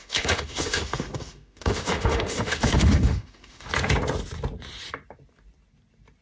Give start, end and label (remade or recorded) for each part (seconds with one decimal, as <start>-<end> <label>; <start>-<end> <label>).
0.0-3.7 remade; 3.7-6.2 recorded